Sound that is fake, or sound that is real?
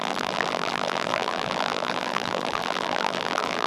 fake